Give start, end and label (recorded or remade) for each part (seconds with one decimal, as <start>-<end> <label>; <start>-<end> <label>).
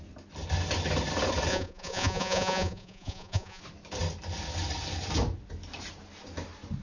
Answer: 0.0-1.5 recorded; 1.5-3.6 remade; 3.6-6.8 recorded